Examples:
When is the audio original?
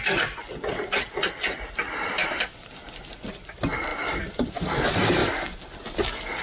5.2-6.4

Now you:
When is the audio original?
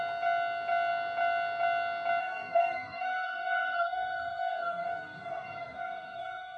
0.0-2.2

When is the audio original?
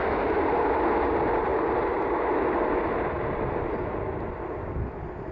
0.0-5.3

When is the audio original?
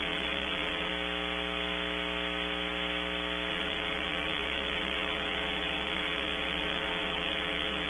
0.9-3.5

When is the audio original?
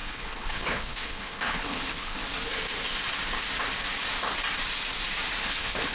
2.2-5.4